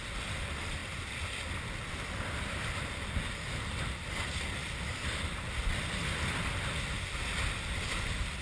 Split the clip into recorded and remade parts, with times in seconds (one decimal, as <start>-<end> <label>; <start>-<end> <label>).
0.0-8.4 recorded